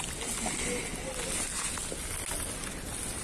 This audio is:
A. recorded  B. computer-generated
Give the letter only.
A